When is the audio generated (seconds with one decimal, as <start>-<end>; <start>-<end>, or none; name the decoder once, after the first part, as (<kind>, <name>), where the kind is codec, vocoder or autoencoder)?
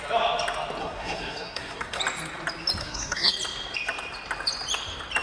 0.8-2.0 (codec, SNAC); 2.8-3.3